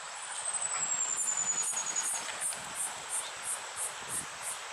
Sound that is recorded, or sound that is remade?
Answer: recorded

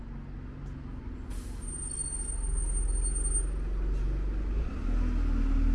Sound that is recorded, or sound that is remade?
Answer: recorded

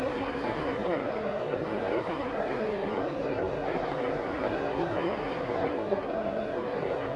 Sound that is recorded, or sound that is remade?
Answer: remade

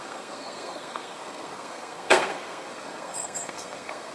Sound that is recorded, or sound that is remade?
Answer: remade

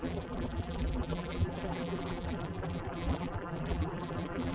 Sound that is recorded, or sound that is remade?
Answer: remade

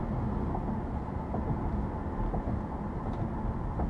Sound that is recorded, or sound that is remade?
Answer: recorded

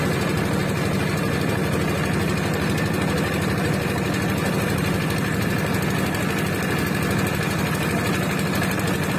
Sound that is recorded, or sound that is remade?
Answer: recorded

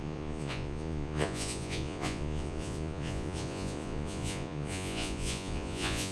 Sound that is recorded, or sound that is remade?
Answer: remade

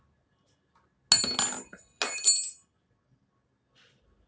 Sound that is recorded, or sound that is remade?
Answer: recorded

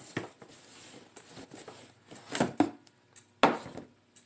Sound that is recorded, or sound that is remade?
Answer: recorded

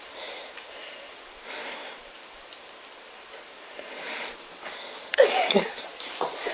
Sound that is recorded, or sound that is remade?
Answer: remade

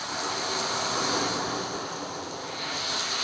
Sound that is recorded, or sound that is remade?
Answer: recorded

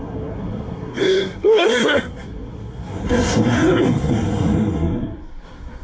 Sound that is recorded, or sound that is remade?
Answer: remade